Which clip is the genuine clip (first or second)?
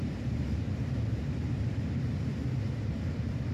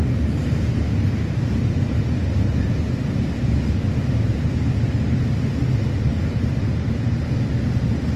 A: second